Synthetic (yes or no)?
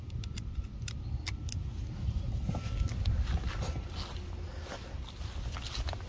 no